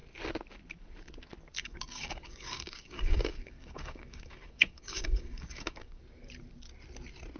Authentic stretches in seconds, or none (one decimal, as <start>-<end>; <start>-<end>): 0.0-1.6; 6.0-7.4